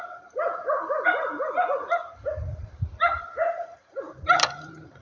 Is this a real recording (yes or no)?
no